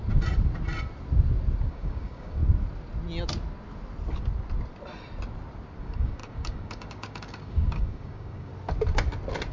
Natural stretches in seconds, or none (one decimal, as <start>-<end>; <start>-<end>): 0.0-1.7; 2.4-5.8; 8.5-9.5